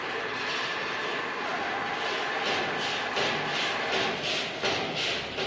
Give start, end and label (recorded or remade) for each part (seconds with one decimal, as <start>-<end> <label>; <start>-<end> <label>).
0.0-5.5 recorded